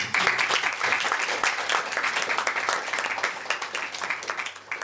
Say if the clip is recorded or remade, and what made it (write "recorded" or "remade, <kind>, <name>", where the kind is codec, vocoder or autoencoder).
recorded